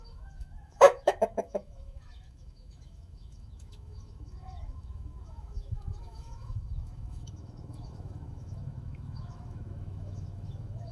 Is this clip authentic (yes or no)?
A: no